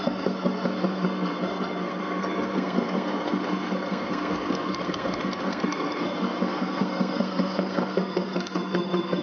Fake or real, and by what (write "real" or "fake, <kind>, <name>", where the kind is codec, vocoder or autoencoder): fake, codec, SNAC